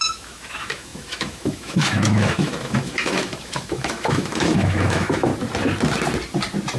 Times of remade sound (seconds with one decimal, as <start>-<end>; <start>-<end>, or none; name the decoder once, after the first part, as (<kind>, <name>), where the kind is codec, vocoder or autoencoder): 0.0-5.3 (autoencoder, DAC-VAE)